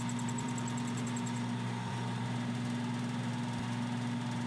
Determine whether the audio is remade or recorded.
remade